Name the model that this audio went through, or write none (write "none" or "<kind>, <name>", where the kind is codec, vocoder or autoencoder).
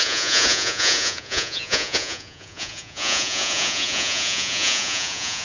vocoder, Vocos